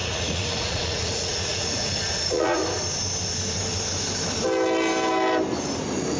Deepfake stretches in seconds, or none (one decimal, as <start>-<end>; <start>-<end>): 0.0-2.6